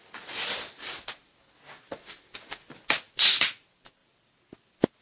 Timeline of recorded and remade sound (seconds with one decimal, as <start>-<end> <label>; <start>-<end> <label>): 0.0-5.0 recorded